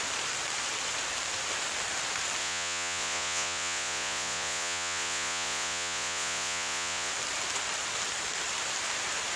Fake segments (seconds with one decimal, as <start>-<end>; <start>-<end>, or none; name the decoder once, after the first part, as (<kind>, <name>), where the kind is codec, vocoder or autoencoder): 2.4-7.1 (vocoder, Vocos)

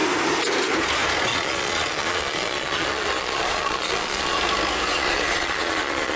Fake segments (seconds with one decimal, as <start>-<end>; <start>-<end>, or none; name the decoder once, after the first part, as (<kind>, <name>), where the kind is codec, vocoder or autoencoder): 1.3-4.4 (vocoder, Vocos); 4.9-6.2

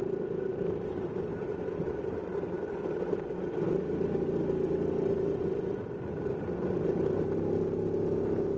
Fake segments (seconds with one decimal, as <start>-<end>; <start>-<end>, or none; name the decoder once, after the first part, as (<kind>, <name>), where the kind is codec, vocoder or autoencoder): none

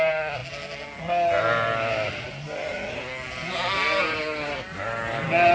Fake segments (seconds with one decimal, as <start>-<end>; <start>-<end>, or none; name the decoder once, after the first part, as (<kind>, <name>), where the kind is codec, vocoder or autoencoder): none

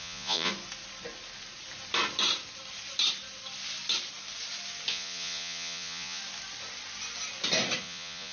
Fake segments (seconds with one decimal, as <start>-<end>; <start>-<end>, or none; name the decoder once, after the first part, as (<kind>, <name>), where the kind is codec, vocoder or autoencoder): 0.0-0.5 (vocoder, Vocos); 4.9-6.2; 7.8-8.3

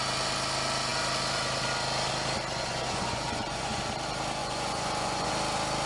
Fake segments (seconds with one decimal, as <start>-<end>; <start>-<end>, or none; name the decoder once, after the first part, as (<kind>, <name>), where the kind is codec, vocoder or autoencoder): 2.5-3.8 (vocoder, Vocos); 4.4-5.3

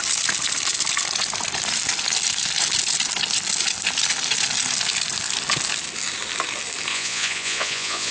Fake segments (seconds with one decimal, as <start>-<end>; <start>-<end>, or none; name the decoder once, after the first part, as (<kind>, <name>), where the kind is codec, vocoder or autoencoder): 6.9-8.1 (vocoder, Vocos)

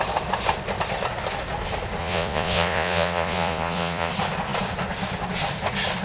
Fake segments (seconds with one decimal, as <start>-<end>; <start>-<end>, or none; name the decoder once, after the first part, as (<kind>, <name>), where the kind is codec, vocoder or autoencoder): 2.0-4.1 (vocoder, Vocos)